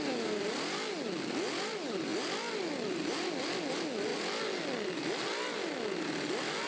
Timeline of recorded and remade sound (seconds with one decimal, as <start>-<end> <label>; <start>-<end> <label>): 0.0-6.7 recorded